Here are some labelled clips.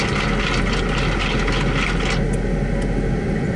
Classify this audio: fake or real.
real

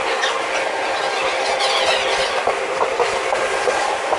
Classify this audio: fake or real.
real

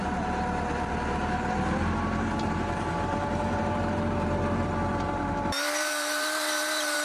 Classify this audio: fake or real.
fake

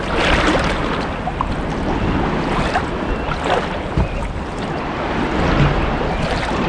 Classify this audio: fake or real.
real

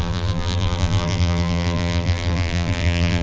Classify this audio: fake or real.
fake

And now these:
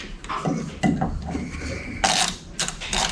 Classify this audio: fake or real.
fake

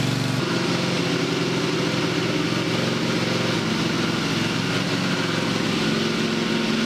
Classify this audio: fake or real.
real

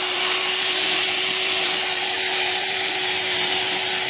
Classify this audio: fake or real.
fake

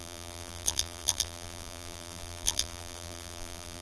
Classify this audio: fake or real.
fake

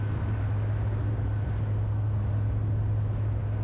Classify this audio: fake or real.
real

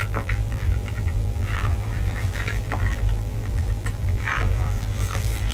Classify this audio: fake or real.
fake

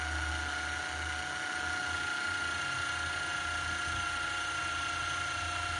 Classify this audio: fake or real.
real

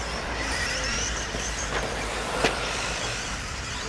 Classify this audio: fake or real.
fake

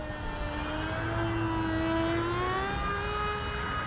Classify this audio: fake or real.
real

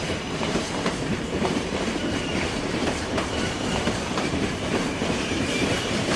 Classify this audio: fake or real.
fake